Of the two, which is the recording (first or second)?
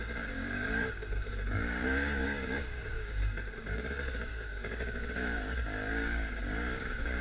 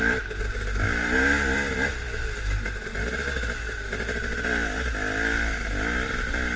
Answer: second